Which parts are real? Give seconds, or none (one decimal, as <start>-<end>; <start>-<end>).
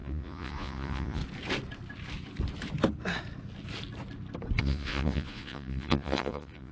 1.2-4.6